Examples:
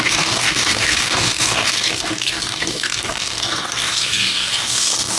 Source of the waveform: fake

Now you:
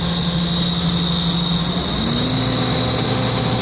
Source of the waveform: real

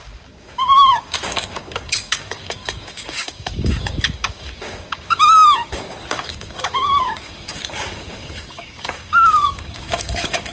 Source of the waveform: fake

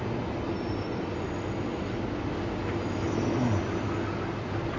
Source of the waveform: real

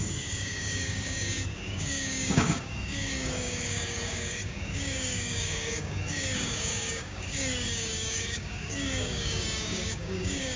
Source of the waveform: fake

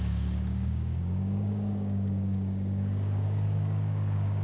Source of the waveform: fake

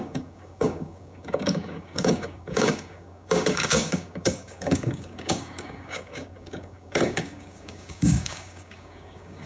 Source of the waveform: fake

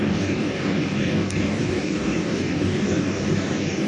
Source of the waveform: fake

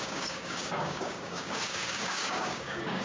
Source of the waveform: fake